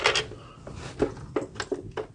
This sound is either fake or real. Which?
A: real